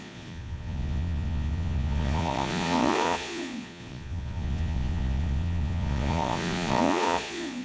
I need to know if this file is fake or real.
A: fake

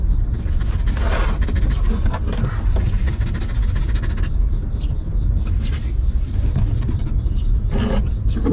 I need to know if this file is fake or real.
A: real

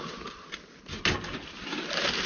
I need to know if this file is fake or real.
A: real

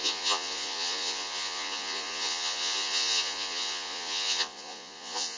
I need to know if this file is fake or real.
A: fake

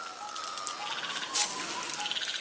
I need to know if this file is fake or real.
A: real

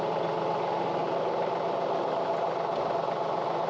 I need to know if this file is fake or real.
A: real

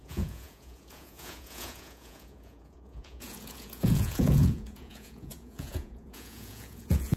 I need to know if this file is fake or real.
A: fake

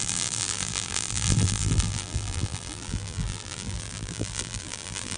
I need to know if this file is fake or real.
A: fake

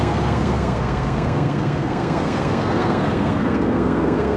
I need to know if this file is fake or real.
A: fake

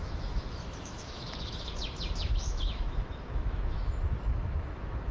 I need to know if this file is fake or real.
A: fake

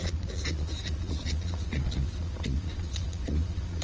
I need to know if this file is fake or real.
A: fake